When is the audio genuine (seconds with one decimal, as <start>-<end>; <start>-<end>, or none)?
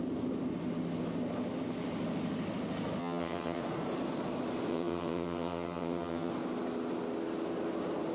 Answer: 0.0-3.0; 3.6-4.7; 6.3-8.1